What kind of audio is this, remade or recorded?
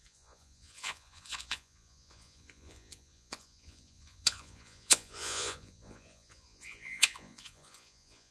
remade